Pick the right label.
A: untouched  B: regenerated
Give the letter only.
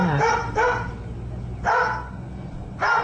A